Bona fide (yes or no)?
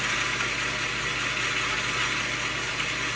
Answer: yes